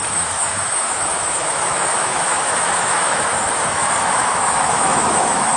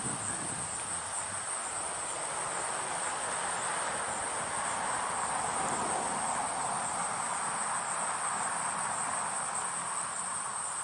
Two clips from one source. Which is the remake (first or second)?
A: first